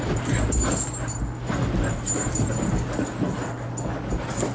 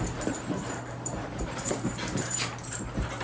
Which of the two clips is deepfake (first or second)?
second